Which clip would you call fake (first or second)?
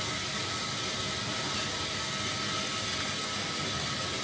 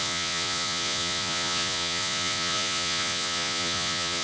second